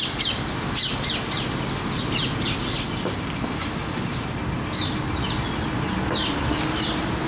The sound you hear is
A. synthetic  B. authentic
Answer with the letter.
B